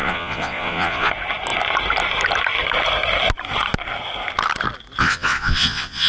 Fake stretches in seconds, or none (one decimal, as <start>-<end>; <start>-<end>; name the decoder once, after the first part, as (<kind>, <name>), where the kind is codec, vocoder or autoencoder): 0.0-1.1 (vocoder, Vocos); 5.0-6.1